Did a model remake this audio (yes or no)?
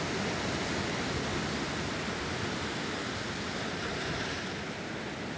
no